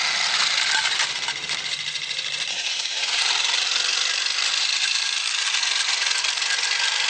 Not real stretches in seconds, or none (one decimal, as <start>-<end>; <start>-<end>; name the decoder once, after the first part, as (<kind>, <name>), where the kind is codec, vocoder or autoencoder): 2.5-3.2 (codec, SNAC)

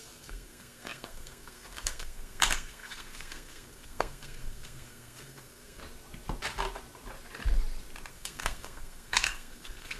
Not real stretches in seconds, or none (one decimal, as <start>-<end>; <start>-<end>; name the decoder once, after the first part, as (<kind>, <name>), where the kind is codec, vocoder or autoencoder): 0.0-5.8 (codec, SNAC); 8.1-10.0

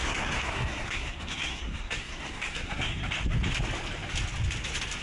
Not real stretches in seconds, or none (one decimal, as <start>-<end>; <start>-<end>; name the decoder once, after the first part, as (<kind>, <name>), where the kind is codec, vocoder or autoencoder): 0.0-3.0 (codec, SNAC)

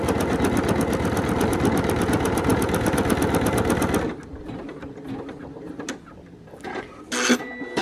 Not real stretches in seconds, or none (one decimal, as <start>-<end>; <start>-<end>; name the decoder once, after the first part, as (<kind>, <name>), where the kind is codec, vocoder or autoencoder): none